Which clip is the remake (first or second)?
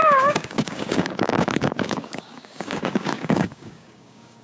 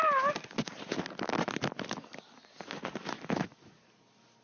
first